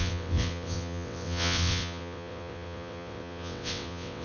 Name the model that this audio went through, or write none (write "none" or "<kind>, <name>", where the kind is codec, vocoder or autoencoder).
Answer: vocoder, WaveNeXt